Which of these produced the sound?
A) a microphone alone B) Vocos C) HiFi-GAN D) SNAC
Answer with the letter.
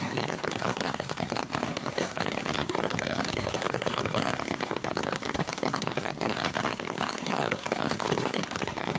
D